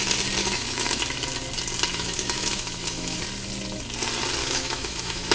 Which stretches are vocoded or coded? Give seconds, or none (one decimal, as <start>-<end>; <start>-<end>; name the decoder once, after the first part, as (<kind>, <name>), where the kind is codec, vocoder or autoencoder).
0.4-1.0 (autoencoder, DAC-VAE); 1.9-3.2; 4.4-5.3